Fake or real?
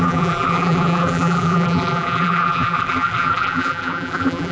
fake